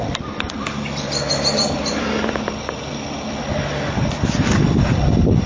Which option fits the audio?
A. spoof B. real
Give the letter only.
B